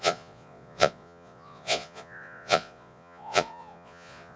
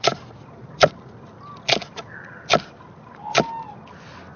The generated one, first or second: first